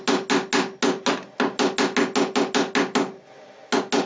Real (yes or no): yes